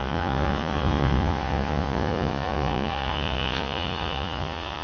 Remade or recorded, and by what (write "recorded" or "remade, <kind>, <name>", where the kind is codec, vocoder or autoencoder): remade, vocoder, Vocos